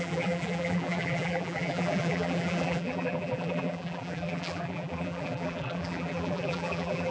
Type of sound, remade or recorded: remade